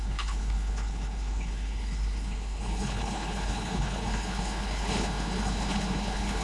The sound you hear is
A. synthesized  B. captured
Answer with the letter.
A